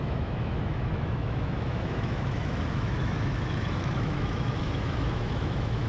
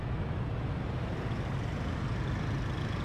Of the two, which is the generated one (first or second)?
first